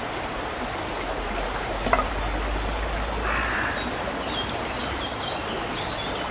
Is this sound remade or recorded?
recorded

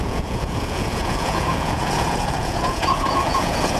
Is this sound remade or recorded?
remade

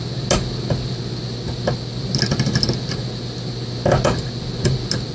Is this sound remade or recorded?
recorded